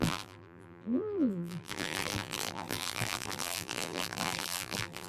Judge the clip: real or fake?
fake